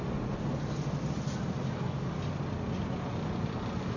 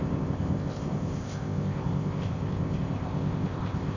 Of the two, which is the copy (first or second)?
second